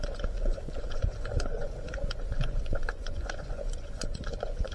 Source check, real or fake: fake